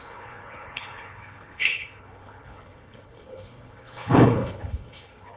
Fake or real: fake